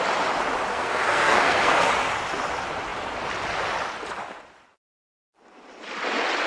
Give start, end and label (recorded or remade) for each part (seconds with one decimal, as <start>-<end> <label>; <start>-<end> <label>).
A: 0.0-0.7 recorded; 0.7-1.9 remade; 1.9-6.5 recorded